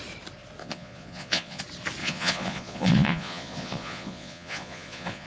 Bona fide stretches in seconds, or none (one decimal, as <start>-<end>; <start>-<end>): 0.0-0.6; 1.6-2.0